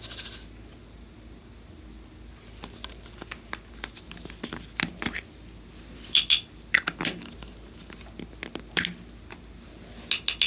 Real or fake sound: real